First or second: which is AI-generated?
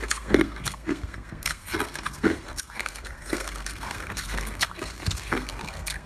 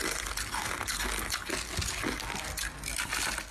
first